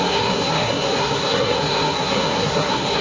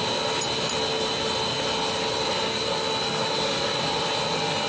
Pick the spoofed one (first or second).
first